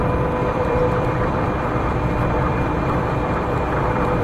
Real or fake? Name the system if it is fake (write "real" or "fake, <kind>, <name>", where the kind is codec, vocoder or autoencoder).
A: fake, vocoder, BigVGAN v2